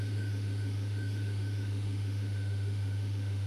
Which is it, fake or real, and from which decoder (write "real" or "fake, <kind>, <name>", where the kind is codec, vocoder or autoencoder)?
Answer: fake, autoencoder, DAC-VAE